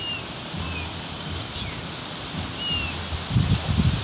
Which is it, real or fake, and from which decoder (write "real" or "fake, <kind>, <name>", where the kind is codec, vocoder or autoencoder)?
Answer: real